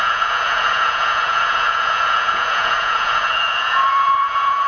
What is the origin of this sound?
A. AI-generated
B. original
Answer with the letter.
A